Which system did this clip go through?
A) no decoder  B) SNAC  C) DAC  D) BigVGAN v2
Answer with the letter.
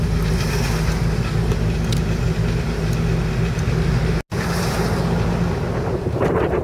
A